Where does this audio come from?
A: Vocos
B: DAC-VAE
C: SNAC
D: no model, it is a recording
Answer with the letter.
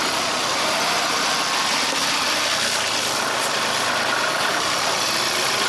D